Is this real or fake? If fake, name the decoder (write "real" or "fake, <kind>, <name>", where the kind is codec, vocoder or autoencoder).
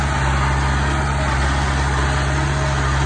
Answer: real